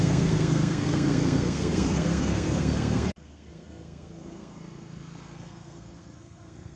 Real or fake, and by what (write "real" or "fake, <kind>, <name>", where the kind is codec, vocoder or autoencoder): fake, codec, SNAC